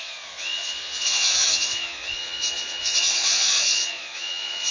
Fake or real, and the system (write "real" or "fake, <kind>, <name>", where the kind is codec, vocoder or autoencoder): fake, vocoder, Vocos